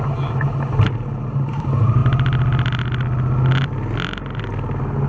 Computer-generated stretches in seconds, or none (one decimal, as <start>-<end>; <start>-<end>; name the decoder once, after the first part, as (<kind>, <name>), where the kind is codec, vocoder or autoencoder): none